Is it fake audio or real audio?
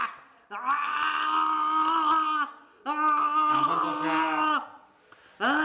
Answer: real